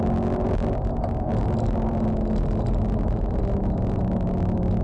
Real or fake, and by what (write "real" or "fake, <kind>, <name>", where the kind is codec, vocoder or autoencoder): real